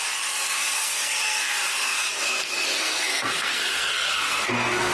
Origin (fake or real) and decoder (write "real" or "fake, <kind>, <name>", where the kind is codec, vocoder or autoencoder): fake, codec, SNAC